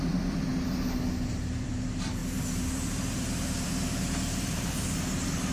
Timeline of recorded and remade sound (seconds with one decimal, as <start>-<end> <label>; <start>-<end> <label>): 0.0-0.5 remade; 0.5-1.1 recorded; 1.1-5.5 remade